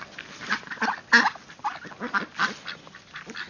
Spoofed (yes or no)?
no